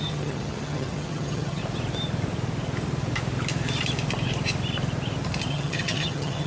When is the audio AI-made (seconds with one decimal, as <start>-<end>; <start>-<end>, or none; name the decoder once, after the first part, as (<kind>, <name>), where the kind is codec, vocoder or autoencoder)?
0.0-1.6 (vocoder, HiFi-GAN); 5.5-6.5